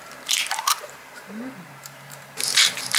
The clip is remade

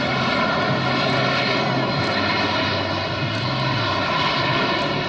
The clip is recorded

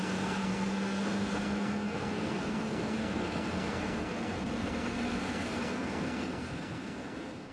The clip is remade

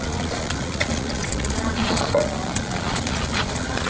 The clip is remade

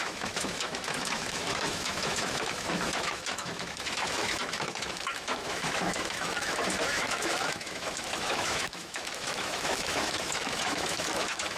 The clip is remade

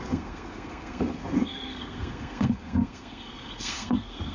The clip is remade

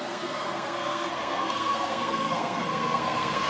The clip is remade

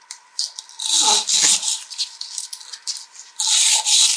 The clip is recorded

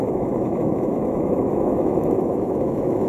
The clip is remade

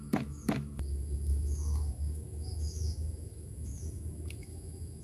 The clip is remade